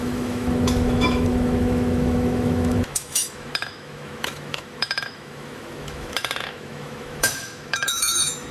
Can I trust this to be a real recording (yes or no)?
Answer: no